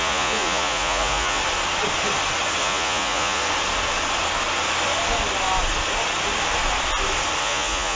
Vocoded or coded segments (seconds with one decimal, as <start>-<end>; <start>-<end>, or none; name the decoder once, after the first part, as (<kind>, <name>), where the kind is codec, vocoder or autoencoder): 0.0-1.4 (vocoder, Vocos); 2.6-3.4; 7.4-8.0